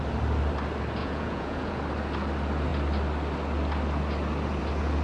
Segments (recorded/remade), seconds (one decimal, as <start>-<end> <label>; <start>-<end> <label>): 0.0-1.0 recorded; 1.0-1.8 remade; 1.8-5.0 recorded